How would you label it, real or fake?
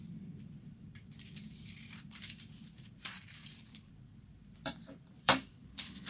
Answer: fake